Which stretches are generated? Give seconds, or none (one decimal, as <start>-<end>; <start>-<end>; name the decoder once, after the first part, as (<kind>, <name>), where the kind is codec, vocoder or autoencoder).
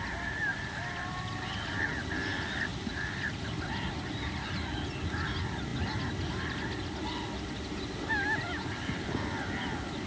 0.5-1.3 (vocoder, BigVGAN v2); 2.7-3.4